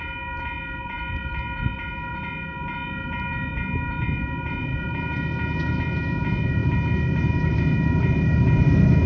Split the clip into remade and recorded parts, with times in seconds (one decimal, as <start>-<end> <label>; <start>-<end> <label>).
0.0-9.1 recorded